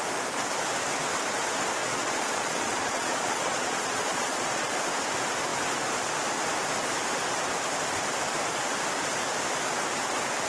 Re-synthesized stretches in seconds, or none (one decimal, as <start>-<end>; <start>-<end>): 1.8-4.7